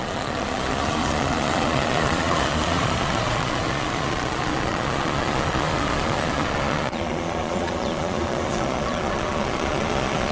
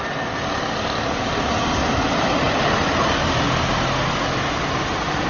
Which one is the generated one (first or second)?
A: first